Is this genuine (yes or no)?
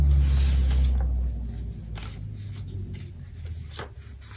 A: yes